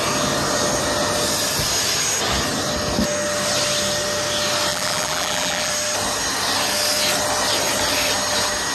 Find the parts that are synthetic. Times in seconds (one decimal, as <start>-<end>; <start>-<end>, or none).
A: 4.7-5.7